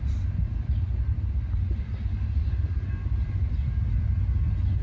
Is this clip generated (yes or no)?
no